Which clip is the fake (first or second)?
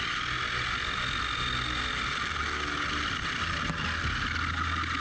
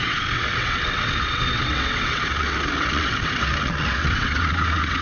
second